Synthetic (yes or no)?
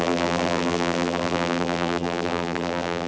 yes